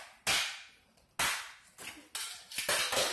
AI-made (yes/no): no